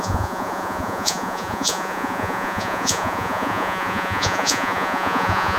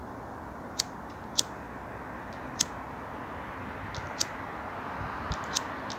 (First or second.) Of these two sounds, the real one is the second